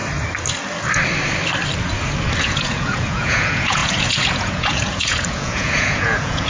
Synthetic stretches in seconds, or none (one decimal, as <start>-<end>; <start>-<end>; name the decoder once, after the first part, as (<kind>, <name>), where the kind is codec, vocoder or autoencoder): 2.4-6.5 (vocoder, Vocos)